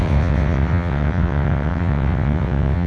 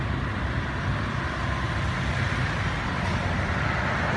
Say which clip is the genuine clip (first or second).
second